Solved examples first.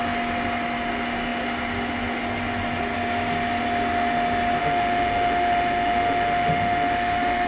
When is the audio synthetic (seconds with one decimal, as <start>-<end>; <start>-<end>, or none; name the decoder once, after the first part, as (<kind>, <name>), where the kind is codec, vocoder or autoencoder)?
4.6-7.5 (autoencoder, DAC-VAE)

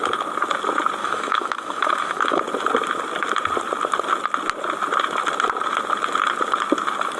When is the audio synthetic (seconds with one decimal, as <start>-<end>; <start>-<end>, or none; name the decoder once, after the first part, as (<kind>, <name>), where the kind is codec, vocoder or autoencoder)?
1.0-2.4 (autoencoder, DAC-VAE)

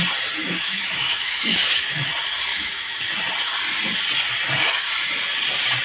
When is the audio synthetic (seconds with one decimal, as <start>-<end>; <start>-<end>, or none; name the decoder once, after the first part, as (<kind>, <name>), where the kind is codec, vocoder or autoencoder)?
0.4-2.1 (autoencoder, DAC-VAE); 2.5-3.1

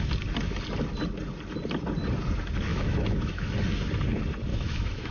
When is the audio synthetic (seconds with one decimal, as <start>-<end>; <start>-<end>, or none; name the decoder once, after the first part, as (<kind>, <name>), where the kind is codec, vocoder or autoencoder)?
2.7-3.5 (autoencoder, DAC-VAE); 4.5-5.1

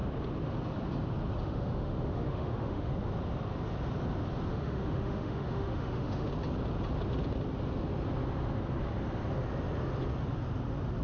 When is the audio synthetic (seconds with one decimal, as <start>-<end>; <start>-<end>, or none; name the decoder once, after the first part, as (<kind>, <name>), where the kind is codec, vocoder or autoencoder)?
1.4-2.9 (autoencoder, DAC-VAE); 4.5-6.3

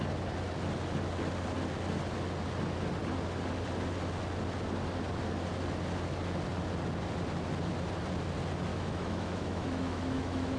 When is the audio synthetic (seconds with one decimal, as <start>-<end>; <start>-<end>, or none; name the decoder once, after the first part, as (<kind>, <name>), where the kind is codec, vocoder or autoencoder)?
8.7-10.6 (autoencoder, DAC-VAE)